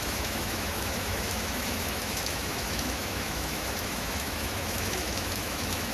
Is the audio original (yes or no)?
no